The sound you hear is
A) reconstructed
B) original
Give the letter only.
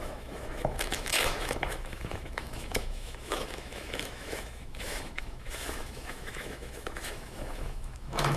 A